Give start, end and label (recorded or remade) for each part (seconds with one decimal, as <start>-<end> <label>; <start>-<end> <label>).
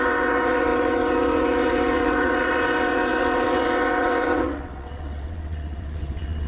0.0-6.5 remade